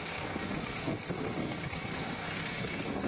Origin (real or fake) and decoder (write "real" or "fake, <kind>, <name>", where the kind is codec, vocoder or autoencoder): fake, codec, SNAC